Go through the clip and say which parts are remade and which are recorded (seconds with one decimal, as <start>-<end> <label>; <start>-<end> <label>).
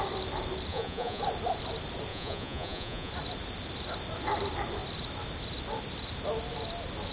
0.0-0.7 recorded; 0.7-1.2 remade; 1.2-2.1 recorded; 2.1-3.1 remade; 3.1-7.1 recorded